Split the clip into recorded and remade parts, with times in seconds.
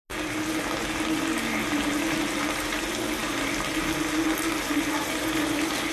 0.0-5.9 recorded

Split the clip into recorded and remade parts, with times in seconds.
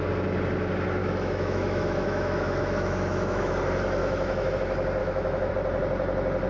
0.0-1.0 recorded; 1.0-3.5 remade; 3.5-4.0 recorded; 4.0-4.5 remade; 4.5-5.0 recorded; 5.0-5.5 remade; 5.5-6.5 recorded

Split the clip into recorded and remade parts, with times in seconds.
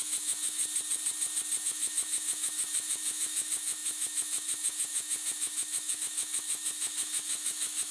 0.0-0.6 remade; 0.6-1.6 recorded; 1.6-7.9 remade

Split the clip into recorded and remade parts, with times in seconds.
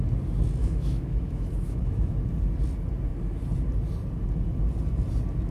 0.0-0.6 recorded; 0.6-2.1 remade; 2.1-5.5 recorded